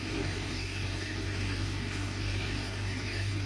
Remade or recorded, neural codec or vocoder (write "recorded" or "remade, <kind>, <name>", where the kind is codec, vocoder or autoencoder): remade, codec, DAC